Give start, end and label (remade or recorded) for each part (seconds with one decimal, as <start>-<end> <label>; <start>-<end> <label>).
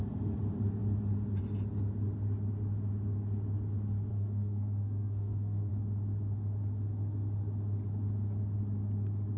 0.0-4.1 recorded; 4.1-5.7 remade; 5.7-9.4 recorded